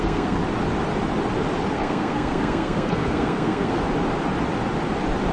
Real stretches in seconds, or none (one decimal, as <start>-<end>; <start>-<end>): 0.4-1.7; 3.8-5.3